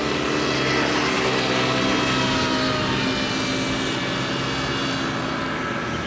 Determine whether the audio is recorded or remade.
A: recorded